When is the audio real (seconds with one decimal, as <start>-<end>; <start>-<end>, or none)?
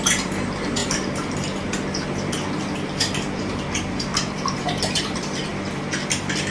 0.8-3.4; 5.5-6.5